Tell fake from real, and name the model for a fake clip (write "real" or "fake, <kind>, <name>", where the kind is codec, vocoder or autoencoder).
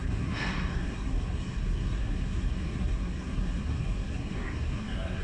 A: fake, codec, SNAC